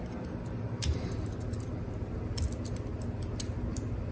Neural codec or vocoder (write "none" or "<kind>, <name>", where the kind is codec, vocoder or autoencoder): none